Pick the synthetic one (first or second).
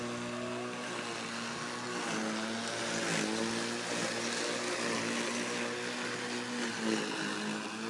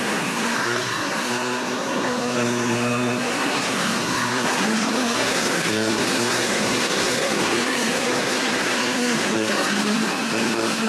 second